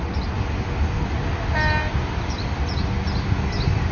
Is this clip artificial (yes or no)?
no